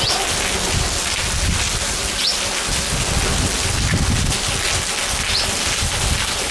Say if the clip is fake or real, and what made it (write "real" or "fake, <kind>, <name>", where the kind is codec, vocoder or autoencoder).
real